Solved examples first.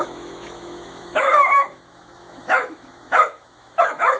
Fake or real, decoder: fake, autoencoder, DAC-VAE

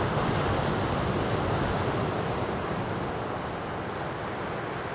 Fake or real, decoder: real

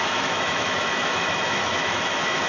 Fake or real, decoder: fake, autoencoder, DAC-VAE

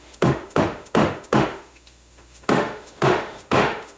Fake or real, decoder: fake, autoencoder, DAC-VAE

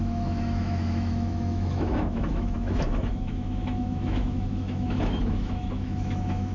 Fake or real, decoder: fake, autoencoder, DAC-VAE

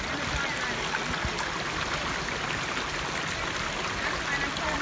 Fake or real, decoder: real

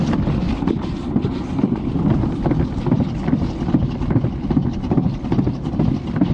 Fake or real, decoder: real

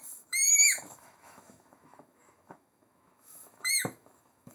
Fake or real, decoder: fake, autoencoder, DAC-VAE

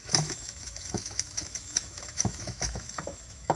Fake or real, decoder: fake, autoencoder, DAC-VAE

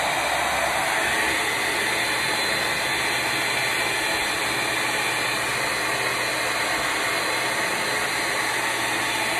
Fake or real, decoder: real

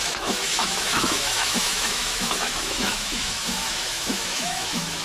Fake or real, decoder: fake, autoencoder, DAC-VAE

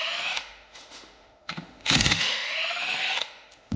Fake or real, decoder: fake, autoencoder, DAC-VAE